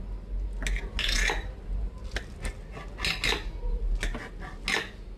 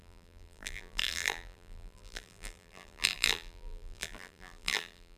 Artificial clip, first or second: second